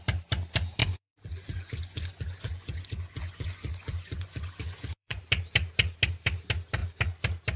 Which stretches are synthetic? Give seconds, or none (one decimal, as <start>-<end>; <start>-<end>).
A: 0.8-5.2